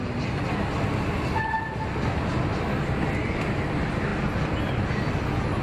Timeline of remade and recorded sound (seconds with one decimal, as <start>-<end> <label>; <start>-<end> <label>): 0.0-5.6 recorded

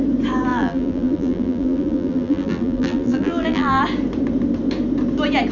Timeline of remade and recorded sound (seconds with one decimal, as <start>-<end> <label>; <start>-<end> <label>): 0.0-0.5 recorded; 0.5-3.8 remade; 3.8-5.5 recorded

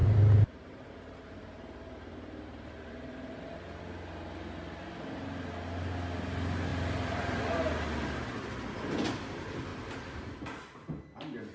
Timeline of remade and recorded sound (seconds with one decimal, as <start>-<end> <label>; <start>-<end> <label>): 0.0-3.8 remade; 3.8-9.7 recorded; 9.7-10.4 remade; 10.4-11.5 recorded

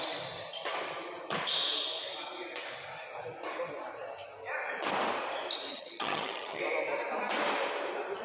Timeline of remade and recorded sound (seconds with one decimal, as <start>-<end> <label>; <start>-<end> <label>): 0.0-5.7 recorded; 5.7-6.6 remade; 6.6-8.2 recorded

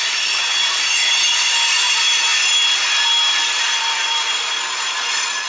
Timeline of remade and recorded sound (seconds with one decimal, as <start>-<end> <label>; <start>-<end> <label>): 0.0-2.3 remade; 2.3-3.4 recorded; 3.4-5.5 remade

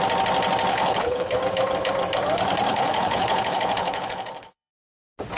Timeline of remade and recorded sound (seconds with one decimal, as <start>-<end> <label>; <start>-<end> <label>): 0.0-0.7 recorded; 0.7-1.4 remade; 1.4-2.7 recorded; 2.7-4.7 remade; 4.7-5.4 recorded

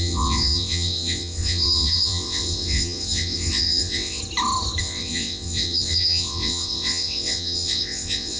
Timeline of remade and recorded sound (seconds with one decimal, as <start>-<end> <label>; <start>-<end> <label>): 0.0-4.2 remade; 4.2-4.8 recorded; 4.8-8.4 remade